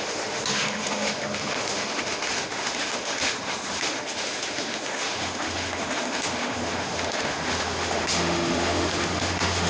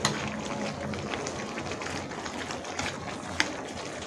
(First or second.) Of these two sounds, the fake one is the first